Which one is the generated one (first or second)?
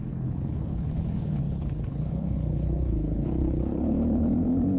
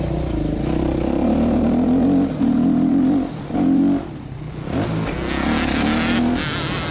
first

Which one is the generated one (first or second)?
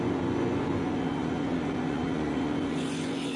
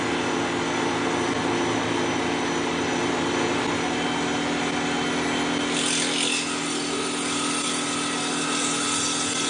first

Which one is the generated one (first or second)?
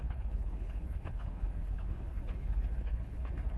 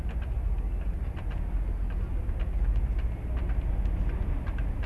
first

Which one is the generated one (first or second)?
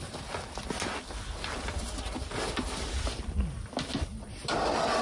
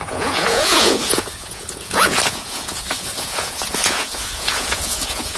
second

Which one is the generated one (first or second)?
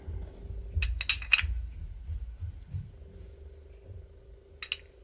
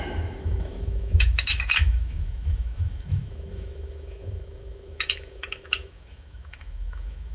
second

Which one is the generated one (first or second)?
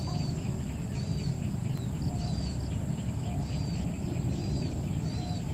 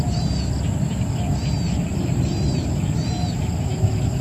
first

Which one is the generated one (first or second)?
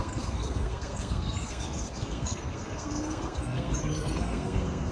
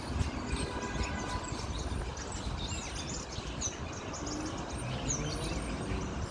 first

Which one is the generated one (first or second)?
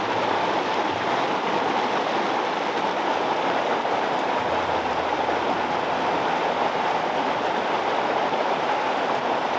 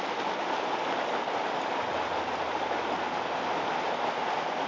first